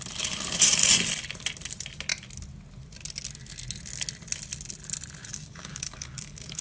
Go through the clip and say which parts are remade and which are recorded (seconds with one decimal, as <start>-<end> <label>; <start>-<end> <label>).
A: 0.0-5.2 recorded; 5.2-6.6 remade